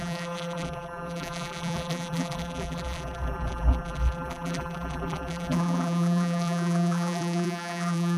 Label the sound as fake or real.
fake